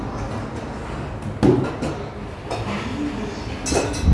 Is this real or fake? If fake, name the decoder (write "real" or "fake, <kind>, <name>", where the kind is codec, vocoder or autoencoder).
real